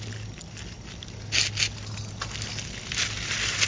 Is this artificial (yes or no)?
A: no